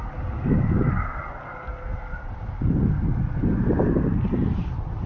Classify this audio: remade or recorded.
recorded